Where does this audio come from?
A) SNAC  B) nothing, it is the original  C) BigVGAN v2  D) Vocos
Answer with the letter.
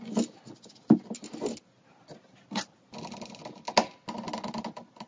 B